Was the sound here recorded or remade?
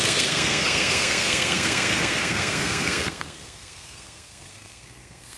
remade